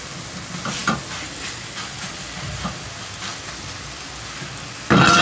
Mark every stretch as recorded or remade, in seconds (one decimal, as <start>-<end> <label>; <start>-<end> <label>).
0.0-5.2 recorded